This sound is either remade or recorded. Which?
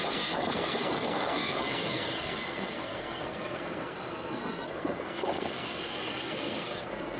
remade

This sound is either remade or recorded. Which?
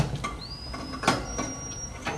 recorded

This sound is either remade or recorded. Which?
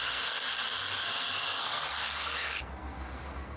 remade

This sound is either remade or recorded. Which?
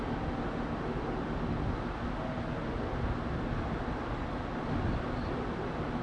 recorded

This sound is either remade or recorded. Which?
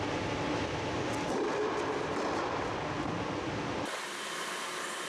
recorded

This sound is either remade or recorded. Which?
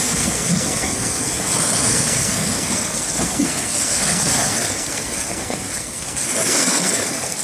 remade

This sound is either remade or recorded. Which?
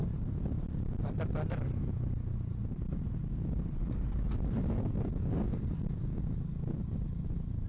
recorded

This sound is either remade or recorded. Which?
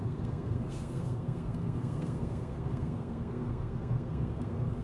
remade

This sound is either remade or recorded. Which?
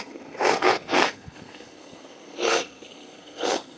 remade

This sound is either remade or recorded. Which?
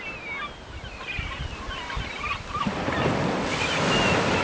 recorded